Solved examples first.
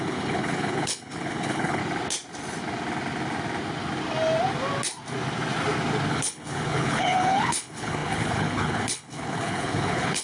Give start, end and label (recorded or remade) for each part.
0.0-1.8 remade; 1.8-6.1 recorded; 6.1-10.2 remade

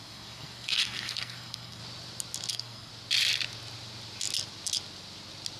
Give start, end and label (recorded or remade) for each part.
0.0-1.8 remade; 1.8-2.5 recorded; 2.5-2.9 remade; 2.9-5.6 recorded

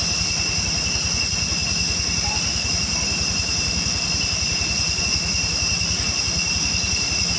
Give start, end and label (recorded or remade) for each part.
0.0-7.4 recorded

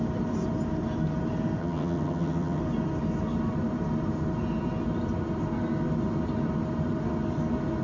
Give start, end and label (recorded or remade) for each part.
0.0-1.6 recorded; 1.6-2.6 remade; 2.6-7.8 recorded

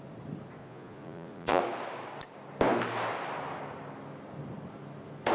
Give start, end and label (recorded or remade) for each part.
0.0-0.6 recorded; 0.6-1.6 remade; 1.6-5.3 recorded